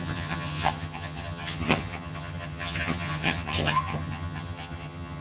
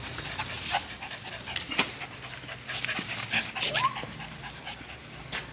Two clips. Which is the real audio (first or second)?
second